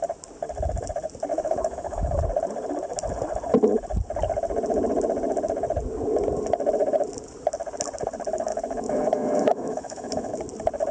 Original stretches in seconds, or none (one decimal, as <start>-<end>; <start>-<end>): 0.0-1.3; 2.2-8.5; 10.3-10.9